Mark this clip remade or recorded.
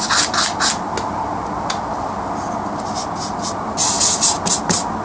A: recorded